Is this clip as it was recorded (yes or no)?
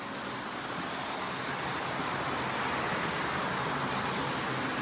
yes